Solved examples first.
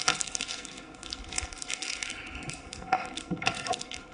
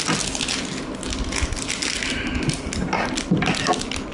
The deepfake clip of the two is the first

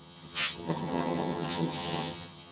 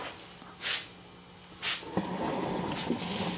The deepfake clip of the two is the first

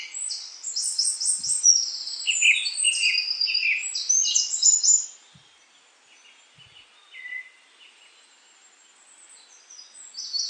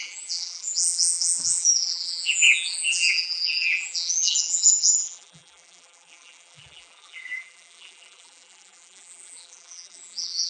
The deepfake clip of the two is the second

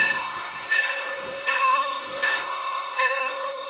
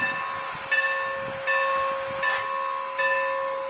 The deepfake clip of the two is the first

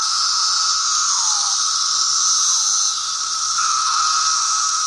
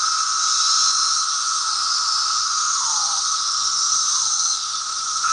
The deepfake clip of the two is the second